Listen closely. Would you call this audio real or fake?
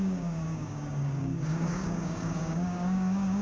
fake